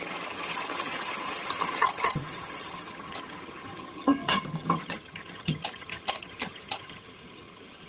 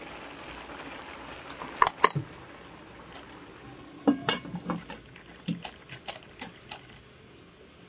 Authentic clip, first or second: second